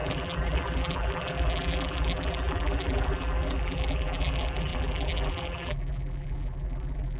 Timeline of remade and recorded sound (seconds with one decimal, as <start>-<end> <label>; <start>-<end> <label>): 0.0-7.2 remade

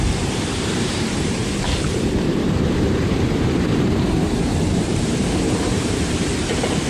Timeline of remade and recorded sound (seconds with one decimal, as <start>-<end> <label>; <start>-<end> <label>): 0.0-6.9 remade